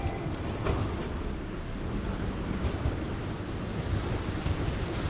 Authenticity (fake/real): fake